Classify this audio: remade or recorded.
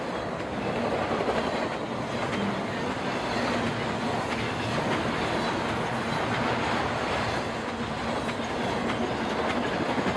recorded